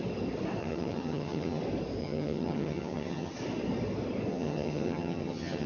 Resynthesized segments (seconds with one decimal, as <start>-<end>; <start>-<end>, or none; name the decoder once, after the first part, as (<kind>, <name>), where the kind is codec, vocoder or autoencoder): 0.6-1.6 (vocoder, HiFi-GAN); 2.0-3.3; 4.3-5.7